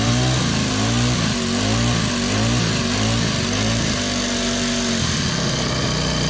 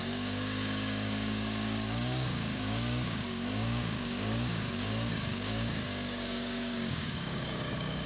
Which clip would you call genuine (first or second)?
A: first